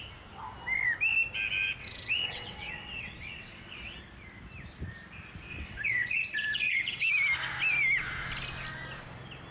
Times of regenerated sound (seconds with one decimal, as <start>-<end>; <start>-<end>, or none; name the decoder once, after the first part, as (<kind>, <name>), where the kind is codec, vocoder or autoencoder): 1.8-4.0 (vocoder, WaveNeXt); 5.5-7.1